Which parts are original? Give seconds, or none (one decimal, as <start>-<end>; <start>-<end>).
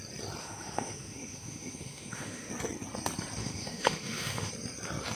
0.0-0.4; 2.5-3.4; 4.5-5.1